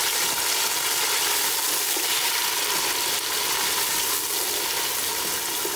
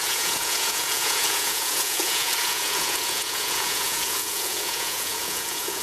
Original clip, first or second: first